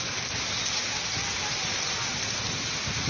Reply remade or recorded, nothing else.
recorded